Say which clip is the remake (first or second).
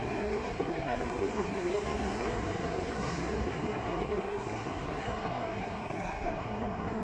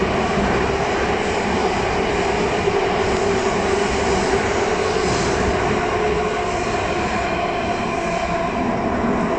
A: first